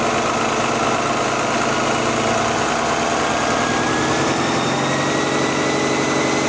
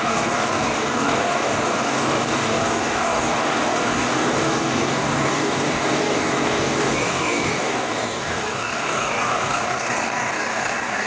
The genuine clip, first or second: first